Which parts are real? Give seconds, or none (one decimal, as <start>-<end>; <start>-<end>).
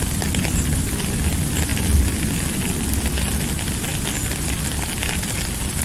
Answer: 0.0-1.7; 3.2-3.9